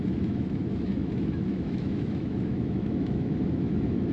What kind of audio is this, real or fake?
fake